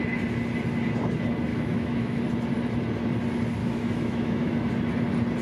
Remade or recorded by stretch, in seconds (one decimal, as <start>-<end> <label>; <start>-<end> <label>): 0.0-1.5 recorded; 1.5-2.2 remade; 2.2-3.6 recorded; 3.6-4.7 remade; 4.7-5.4 recorded